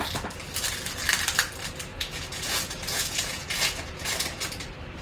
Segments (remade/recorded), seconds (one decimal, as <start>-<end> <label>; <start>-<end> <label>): 0.0-1.9 recorded; 1.9-4.1 remade; 4.1-5.0 recorded